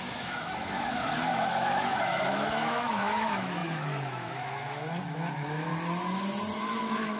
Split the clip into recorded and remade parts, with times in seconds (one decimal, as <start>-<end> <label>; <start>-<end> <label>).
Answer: 0.0-5.7 remade; 5.7-6.6 recorded; 6.6-7.2 remade